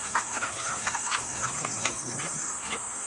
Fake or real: fake